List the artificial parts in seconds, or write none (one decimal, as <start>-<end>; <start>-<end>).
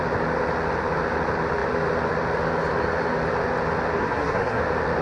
4.0-4.6